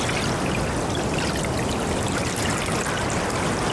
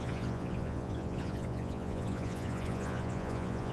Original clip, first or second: first